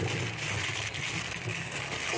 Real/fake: real